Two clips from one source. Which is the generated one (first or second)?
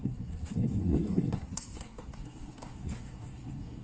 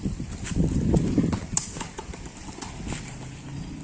first